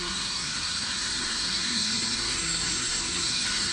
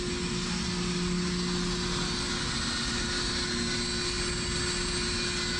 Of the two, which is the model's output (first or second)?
first